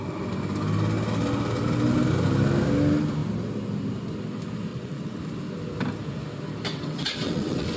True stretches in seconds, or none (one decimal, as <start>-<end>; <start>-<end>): 0.0-4.7; 5.2-6.7